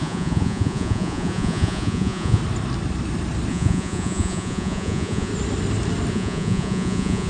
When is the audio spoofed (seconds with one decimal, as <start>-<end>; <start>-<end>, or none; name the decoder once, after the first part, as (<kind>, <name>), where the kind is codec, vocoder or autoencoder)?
0.0-2.4 (vocoder, Vocos); 3.5-5.3; 6.1-7.3